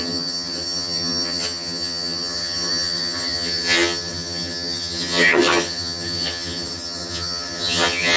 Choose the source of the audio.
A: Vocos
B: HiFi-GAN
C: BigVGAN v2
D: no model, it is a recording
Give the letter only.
B